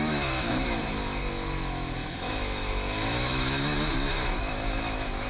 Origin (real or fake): fake